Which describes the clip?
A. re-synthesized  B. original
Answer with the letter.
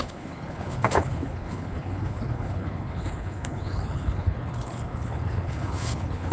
A